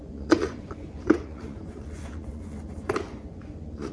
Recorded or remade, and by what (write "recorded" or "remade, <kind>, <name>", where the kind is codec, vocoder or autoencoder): remade, vocoder, Vocos